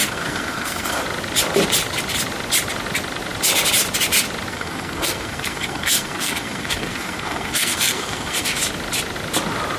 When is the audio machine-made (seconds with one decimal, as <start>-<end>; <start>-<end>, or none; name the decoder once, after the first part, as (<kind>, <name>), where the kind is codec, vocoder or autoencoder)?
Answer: 0.0-1.0 (codec, SNAC); 4.5-8.6